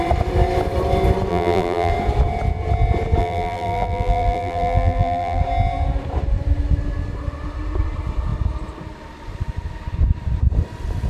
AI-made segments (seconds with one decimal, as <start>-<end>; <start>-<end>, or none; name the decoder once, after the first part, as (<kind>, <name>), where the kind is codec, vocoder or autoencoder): 1.3-1.9 (vocoder, BigVGAN v2); 3.2-5.4